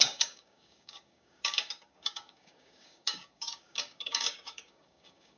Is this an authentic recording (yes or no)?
no